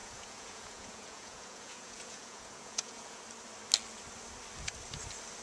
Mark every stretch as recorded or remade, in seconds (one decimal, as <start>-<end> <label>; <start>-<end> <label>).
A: 0.0-3.2 remade; 3.2-5.4 recorded